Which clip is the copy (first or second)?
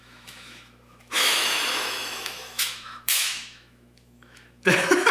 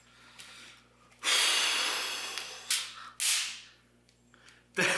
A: first